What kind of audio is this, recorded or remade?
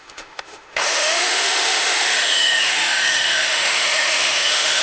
remade